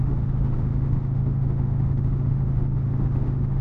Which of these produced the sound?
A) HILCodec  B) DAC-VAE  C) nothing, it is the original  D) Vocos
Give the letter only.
B